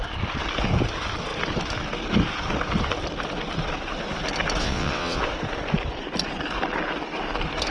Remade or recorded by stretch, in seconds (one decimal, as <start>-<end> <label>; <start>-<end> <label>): 0.0-4.6 recorded; 4.6-5.2 remade; 5.2-7.7 recorded